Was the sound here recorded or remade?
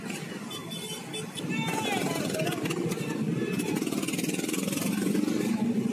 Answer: recorded